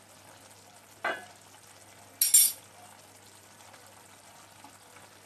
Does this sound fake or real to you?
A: real